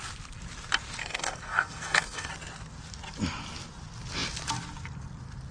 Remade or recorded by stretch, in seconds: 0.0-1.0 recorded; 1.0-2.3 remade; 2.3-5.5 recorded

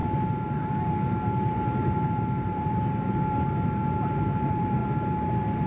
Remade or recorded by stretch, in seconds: 0.0-4.8 remade; 4.8-5.7 recorded

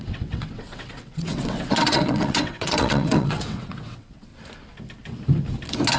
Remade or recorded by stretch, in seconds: 0.0-4.3 remade; 4.3-6.0 recorded

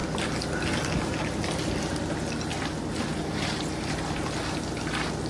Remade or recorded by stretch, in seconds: 0.0-5.3 recorded

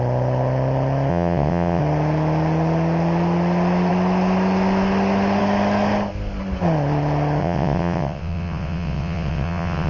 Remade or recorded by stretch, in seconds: 0.0-1.1 recorded; 1.1-1.8 remade; 1.8-7.4 recorded; 7.4-9.9 remade